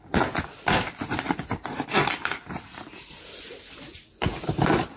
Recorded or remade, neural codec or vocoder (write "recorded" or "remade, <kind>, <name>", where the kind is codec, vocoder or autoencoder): recorded